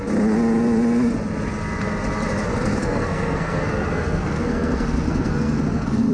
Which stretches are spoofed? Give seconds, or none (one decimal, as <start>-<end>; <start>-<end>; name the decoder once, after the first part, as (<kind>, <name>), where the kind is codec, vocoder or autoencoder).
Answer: 2.5-6.1 (codec, SNAC)